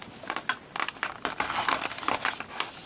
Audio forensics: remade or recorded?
recorded